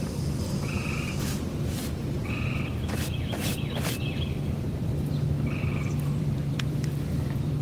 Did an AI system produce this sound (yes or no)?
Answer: yes